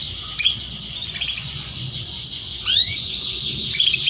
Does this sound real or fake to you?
fake